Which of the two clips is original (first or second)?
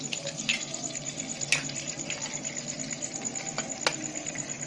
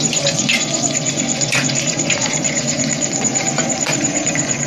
first